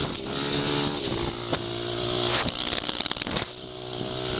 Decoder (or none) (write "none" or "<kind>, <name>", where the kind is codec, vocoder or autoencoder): none